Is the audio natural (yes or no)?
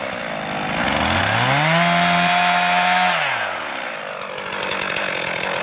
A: yes